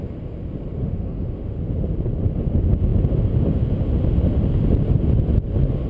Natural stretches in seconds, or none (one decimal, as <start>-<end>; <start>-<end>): 0.0-0.8; 1.6-5.9